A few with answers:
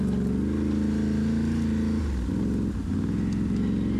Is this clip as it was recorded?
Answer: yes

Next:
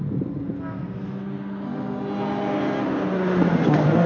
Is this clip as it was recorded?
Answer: yes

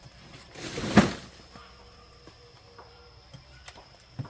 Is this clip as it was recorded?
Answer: no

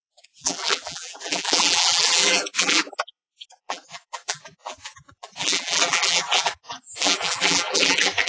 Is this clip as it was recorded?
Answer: no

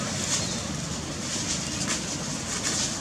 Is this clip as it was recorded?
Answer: yes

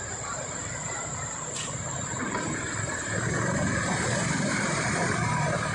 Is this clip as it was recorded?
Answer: no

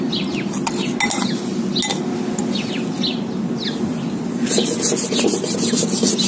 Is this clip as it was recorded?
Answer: yes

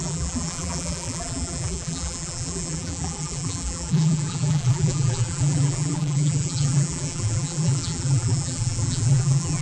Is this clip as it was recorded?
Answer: no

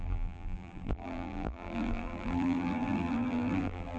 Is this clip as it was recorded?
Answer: no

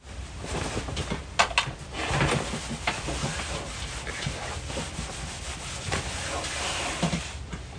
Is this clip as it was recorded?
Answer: yes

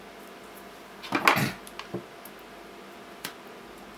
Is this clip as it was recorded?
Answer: yes